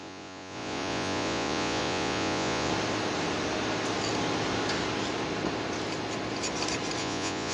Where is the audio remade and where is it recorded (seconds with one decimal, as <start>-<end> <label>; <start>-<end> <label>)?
0.0-2.7 remade; 2.7-7.0 recorded; 7.0-7.5 remade